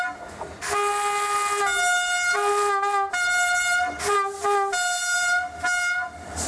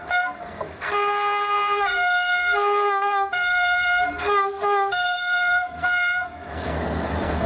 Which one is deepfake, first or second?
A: second